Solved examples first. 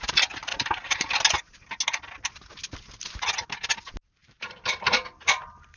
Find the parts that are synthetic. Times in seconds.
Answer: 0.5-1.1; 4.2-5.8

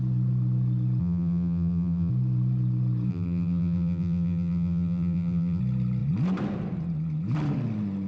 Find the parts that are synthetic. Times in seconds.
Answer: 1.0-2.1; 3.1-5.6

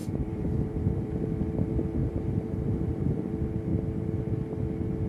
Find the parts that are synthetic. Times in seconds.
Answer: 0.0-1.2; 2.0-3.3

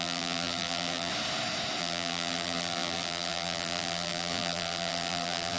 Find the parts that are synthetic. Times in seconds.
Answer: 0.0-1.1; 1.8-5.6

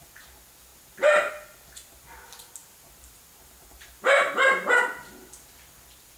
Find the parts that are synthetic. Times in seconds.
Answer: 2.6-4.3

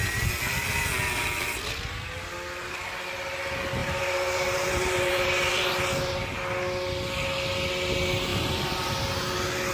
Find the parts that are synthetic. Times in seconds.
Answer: 3.8-5.7; 8.3-8.9

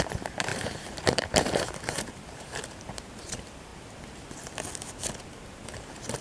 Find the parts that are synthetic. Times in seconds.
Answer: 0.0-3.7; 5.2-6.2

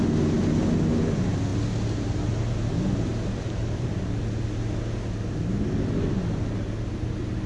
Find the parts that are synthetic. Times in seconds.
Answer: 3.1-4.2